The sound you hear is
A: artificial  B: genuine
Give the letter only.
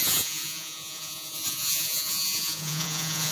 A